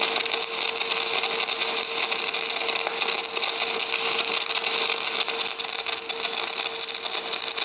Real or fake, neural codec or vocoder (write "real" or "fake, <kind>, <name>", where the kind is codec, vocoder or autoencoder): real